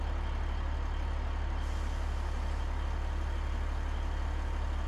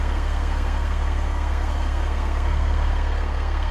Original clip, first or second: first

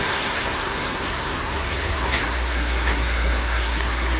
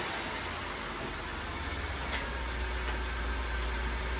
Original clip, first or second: second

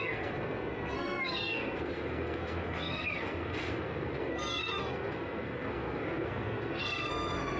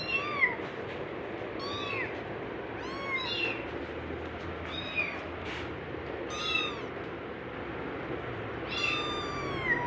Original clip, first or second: second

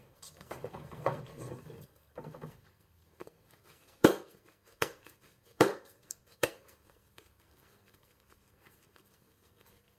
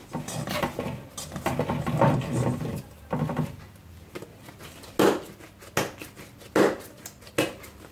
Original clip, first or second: second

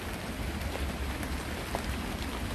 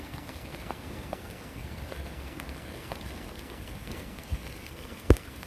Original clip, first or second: first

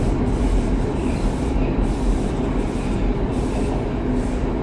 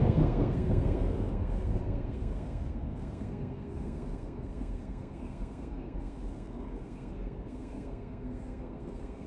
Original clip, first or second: first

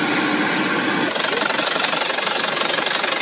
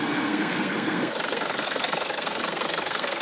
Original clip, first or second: first